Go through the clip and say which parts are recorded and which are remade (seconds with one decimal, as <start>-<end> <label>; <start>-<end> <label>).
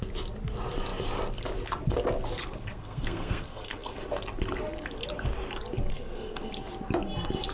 0.0-2.4 recorded; 2.4-4.0 remade; 4.0-5.9 recorded; 5.9-6.5 remade; 6.5-7.5 recorded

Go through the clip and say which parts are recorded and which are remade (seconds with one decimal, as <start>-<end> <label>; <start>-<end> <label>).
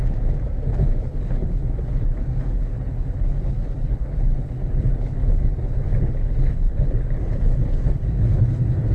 0.0-1.0 recorded; 1.0-8.9 remade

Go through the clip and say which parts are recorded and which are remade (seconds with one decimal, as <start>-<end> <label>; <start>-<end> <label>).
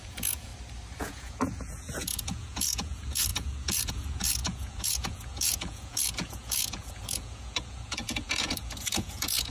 0.0-0.5 remade; 0.5-1.0 recorded; 1.0-9.5 remade